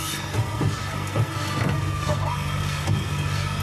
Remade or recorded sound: remade